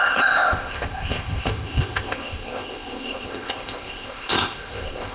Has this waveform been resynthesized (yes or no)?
yes